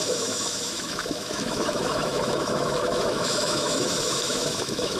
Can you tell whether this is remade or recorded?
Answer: remade